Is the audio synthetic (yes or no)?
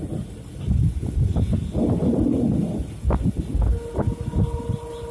no